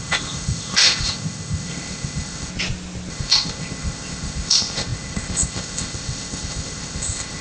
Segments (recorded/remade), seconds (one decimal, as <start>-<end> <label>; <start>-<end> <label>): 0.0-2.5 remade; 2.5-3.1 recorded; 3.1-7.4 remade

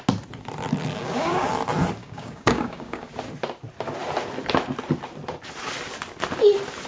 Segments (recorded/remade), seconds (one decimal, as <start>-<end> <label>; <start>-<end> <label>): 0.0-1.0 recorded; 1.0-1.5 remade; 1.5-2.0 recorded; 2.0-3.1 remade; 3.1-6.9 recorded

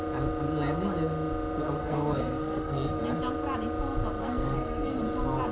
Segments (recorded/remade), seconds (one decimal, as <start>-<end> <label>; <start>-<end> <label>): 0.0-1.8 recorded; 1.8-3.0 remade; 3.0-4.2 recorded; 4.2-5.0 remade; 5.0-5.5 recorded

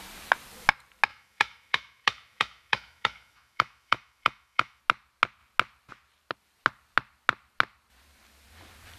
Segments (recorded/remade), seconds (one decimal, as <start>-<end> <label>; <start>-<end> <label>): 0.0-1.1 recorded; 1.1-4.8 remade; 4.8-9.0 recorded

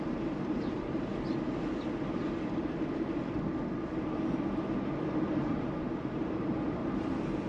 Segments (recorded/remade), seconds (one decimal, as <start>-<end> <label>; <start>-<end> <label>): 0.0-1.1 remade; 1.1-5.3 recorded; 5.3-6.8 remade; 6.8-7.5 recorded

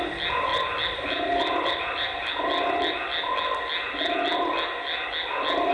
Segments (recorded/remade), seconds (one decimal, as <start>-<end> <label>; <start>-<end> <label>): 0.0-0.5 recorded; 0.5-2.3 remade; 2.3-5.7 recorded

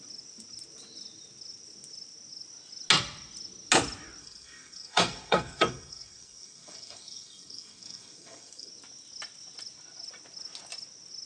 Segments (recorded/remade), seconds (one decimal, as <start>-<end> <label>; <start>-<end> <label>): 0.0-4.2 recorded; 4.2-8.7 remade; 8.7-11.3 recorded